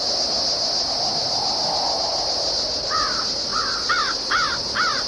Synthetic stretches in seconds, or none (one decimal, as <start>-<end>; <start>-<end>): none